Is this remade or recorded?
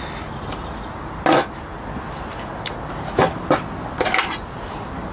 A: recorded